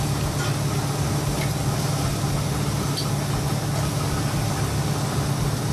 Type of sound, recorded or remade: recorded